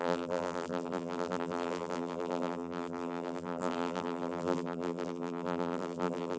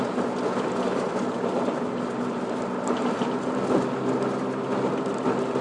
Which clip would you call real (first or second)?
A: second